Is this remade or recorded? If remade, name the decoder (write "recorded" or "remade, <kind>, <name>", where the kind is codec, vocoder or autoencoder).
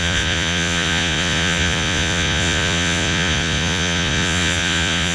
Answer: remade, vocoder, Vocos